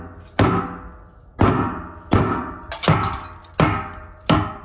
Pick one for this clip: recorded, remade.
recorded